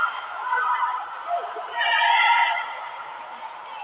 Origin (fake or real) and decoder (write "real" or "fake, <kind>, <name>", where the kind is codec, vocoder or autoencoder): real